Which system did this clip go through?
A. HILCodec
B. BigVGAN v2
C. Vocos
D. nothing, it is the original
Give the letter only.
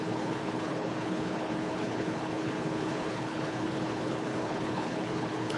A